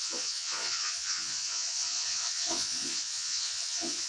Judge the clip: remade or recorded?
remade